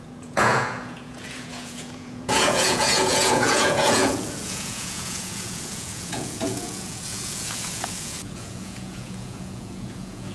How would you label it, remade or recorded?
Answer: remade